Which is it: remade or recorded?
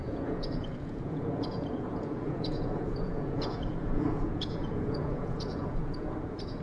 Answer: remade